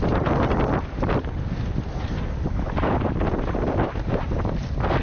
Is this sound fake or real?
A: real